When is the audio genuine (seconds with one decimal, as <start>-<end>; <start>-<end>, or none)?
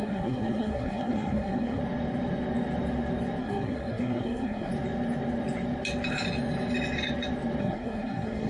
1.8-3.4; 4.7-7.6